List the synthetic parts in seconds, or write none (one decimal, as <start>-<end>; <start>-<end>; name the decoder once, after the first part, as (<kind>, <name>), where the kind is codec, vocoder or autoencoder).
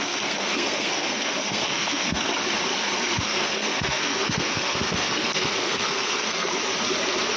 0.0-2.3 (codec, SNAC); 2.8-6.5